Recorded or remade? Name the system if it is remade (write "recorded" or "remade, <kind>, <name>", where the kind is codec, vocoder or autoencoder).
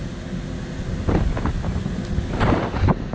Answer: recorded